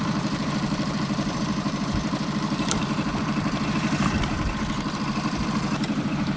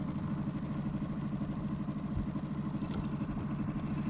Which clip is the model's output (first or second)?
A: first